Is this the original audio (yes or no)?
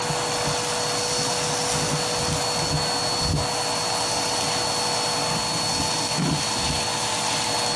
yes